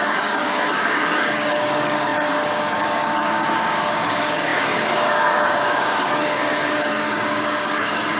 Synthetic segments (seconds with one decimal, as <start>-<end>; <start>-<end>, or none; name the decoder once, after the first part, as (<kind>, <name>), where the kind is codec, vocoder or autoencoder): 0.0-8.2 (codec, DAC)